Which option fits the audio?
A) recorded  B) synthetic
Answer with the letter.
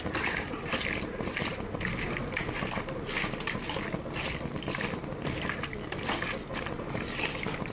A